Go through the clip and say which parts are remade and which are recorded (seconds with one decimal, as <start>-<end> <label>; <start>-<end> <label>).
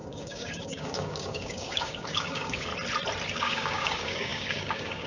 0.0-2.7 remade; 2.7-3.3 recorded; 3.3-5.1 remade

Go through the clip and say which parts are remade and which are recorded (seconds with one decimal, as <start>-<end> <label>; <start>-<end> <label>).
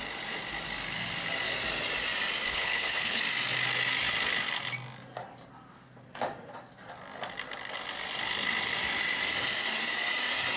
0.0-2.5 recorded; 2.5-3.2 remade; 3.2-10.6 recorded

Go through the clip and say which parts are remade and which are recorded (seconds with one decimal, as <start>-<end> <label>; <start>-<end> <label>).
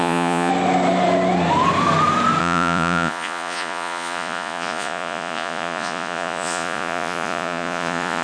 0.0-0.5 remade; 0.5-2.4 recorded; 2.4-8.2 remade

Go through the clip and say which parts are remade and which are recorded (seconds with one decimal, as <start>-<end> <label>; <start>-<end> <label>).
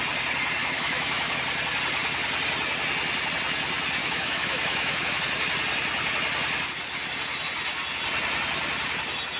0.0-0.6 recorded; 0.6-1.4 remade; 1.4-4.0 recorded; 4.0-5.2 remade; 5.2-9.4 recorded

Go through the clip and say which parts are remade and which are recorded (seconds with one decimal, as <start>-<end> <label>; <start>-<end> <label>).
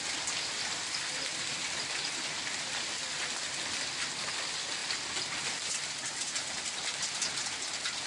0.0-8.1 recorded